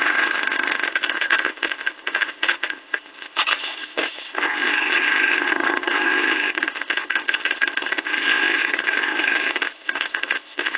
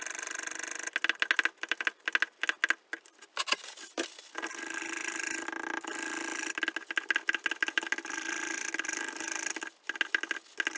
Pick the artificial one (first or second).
first